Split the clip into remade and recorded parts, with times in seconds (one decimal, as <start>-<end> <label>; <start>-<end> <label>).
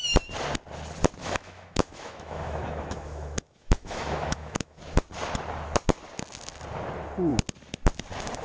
0.0-1.2 recorded; 1.2-4.8 remade; 4.8-8.4 recorded